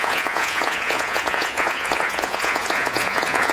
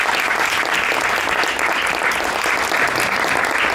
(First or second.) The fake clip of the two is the first